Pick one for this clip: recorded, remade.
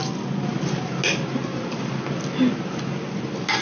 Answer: recorded